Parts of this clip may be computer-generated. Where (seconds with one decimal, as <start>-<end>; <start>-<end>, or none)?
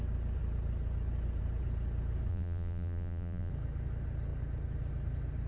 2.3-3.5